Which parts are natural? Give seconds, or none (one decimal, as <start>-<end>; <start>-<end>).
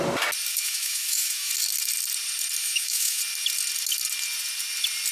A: 0.0-0.5; 1.5-2.6; 3.2-5.1